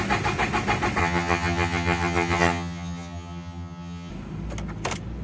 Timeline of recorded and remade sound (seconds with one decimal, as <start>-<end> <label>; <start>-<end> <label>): 0.0-1.0 recorded; 1.0-4.1 remade; 4.1-5.2 recorded